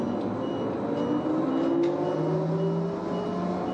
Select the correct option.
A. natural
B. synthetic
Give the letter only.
A